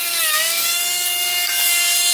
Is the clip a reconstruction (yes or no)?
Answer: yes